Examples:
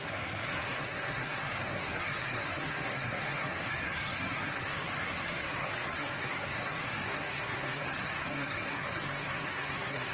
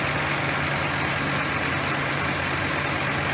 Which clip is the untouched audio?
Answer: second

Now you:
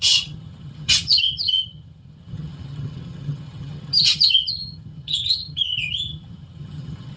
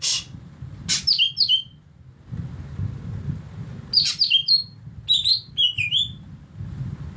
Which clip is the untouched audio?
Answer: second